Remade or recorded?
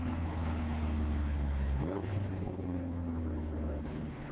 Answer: remade